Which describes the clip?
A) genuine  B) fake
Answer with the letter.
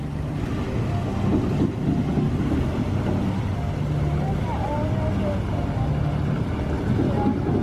A